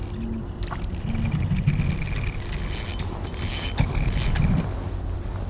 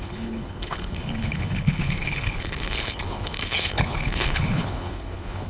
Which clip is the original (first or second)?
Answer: first